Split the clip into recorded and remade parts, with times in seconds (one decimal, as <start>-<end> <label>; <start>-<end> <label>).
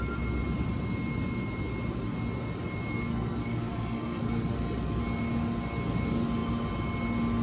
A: 0.0-3.1 recorded; 3.1-5.0 remade; 5.0-7.4 recorded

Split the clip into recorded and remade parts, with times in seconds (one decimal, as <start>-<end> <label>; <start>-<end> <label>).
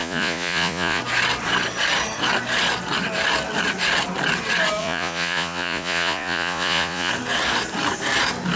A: 0.0-1.0 remade; 1.0-4.8 recorded; 4.8-7.1 remade; 7.1-8.6 recorded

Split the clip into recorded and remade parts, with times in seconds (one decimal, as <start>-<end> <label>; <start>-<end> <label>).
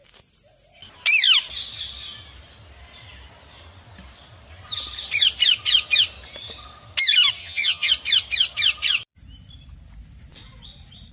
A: 0.0-7.4 recorded; 7.4-7.9 remade; 7.9-11.1 recorded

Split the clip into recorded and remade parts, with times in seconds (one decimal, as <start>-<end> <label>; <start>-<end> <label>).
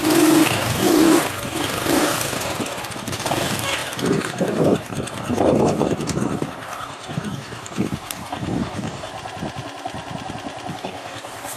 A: 0.0-9.1 remade; 9.1-10.7 recorded; 10.7-11.6 remade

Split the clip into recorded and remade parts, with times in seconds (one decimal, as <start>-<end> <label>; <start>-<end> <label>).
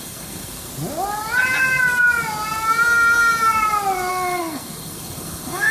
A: 0.0-0.7 remade; 0.7-4.1 recorded; 4.1-5.7 remade